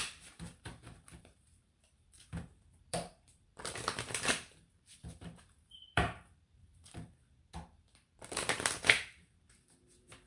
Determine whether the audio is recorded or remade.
remade